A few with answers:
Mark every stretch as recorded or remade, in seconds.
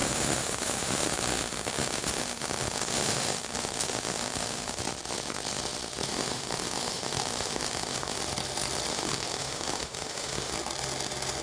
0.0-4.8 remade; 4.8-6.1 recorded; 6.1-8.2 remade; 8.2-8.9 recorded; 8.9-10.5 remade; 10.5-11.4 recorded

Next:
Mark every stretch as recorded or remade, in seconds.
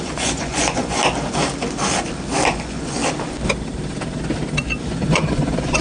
0.0-1.0 remade; 1.0-2.5 recorded; 2.5-3.0 remade; 3.0-4.8 recorded; 4.8-5.8 remade